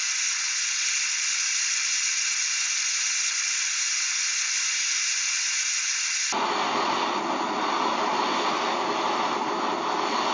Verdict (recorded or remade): recorded